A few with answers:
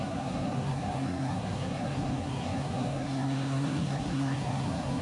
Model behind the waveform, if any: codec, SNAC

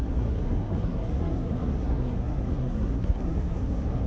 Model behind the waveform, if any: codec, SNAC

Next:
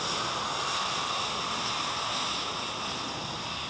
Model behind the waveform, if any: none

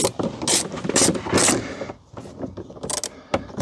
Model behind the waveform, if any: none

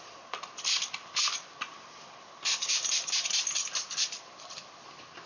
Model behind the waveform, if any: none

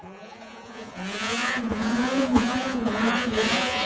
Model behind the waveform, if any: vocoder, Vocos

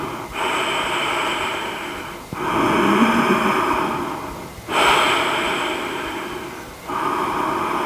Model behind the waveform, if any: none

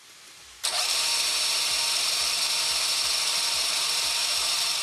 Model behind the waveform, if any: vocoder, BigVGAN v2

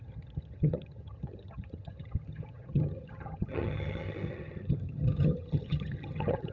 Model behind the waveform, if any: vocoder, HiFi-GAN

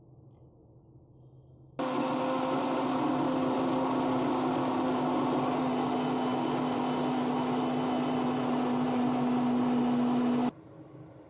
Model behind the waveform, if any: none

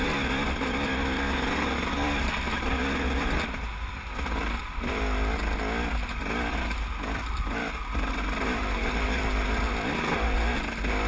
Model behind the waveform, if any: none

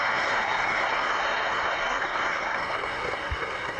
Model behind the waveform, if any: codec, SNAC